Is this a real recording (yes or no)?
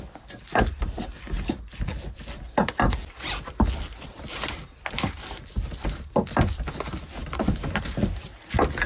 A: yes